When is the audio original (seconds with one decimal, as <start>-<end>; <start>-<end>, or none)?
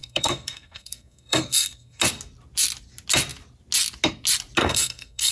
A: 2.0-4.6